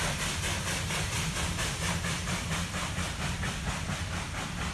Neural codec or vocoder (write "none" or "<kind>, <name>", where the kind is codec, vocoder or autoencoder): none